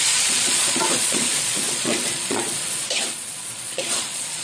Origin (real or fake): fake